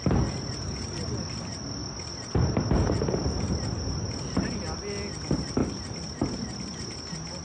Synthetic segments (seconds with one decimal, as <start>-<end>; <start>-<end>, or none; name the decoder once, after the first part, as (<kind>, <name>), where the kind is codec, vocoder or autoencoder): 5.6-6.7 (vocoder, BigVGAN v2)